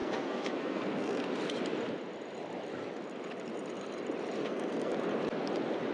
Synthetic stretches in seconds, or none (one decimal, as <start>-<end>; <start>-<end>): 0.0-1.3; 4.4-5.0